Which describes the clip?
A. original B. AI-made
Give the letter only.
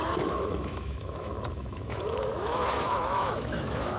B